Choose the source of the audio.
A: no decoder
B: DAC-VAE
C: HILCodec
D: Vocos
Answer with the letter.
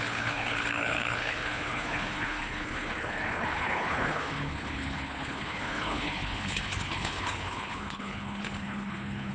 C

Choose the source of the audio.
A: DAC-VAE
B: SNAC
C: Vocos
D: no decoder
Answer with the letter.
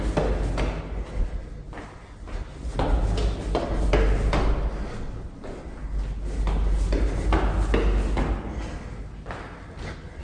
D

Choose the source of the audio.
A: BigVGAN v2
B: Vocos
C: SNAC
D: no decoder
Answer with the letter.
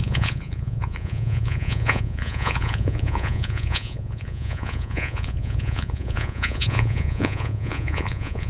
B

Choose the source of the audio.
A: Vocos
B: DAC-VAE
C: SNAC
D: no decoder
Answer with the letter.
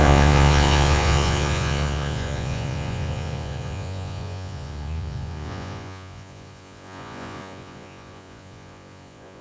A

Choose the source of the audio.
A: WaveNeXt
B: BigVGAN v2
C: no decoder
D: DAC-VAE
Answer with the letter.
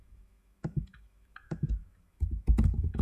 D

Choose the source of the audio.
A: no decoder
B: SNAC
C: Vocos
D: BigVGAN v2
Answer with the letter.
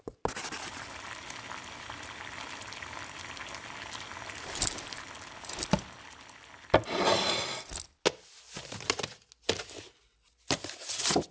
A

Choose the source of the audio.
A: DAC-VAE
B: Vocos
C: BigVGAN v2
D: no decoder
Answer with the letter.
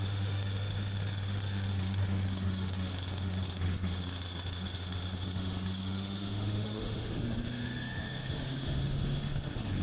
A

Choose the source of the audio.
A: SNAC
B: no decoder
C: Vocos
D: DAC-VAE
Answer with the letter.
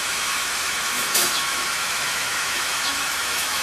D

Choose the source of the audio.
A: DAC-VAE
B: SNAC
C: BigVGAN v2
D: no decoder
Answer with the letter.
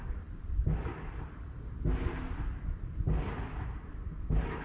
D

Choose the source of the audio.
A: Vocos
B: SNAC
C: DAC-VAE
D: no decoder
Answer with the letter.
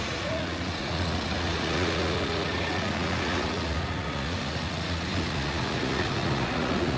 A